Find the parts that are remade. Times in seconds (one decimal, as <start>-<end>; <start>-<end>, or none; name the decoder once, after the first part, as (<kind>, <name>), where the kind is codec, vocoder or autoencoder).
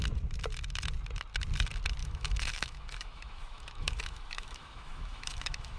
2.0-5.8 (autoencoder, DAC-VAE)